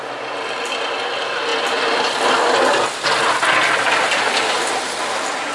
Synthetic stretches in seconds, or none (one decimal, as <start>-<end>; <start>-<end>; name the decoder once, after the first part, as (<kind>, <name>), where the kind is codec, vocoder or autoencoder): none